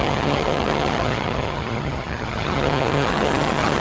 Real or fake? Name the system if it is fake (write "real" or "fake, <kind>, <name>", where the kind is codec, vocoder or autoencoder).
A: fake, vocoder, HiFi-GAN